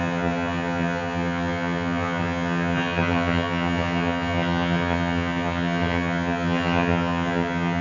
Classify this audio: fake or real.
fake